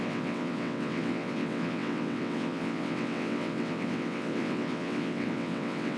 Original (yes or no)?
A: no